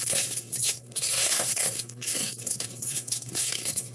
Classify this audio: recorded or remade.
remade